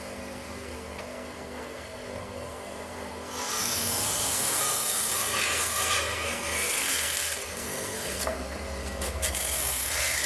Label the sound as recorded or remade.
remade